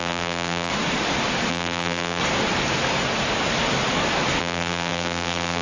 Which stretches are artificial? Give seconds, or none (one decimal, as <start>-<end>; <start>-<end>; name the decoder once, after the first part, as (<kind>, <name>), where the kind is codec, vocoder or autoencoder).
0.0-0.7 (vocoder, BigVGAN v2); 1.5-2.2; 4.4-5.6